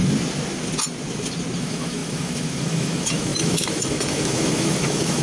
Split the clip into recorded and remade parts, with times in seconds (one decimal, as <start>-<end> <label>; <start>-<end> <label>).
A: 0.0-1.6 recorded; 1.6-5.2 remade

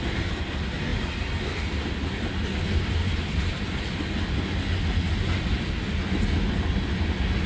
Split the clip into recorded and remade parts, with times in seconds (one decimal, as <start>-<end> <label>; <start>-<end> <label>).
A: 0.0-7.5 recorded

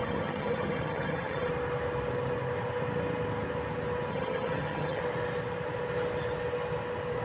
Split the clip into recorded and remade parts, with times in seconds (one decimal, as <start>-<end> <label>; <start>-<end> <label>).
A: 0.0-1.5 remade; 1.5-4.1 recorded; 4.1-5.0 remade; 5.0-7.2 recorded

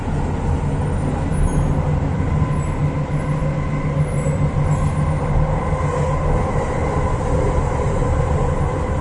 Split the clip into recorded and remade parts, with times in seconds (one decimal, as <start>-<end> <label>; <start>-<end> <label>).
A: 0.0-9.0 recorded